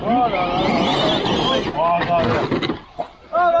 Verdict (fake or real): real